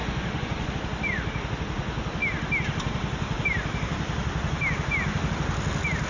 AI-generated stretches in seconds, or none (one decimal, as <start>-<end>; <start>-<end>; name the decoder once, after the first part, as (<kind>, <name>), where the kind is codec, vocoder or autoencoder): 0.0-0.7 (vocoder, Vocos)